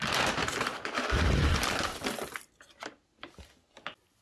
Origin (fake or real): real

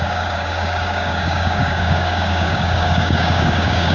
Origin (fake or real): fake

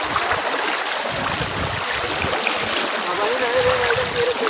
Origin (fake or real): real